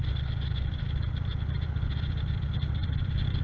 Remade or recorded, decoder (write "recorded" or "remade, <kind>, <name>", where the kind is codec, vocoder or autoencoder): remade, vocoder, BigVGAN v2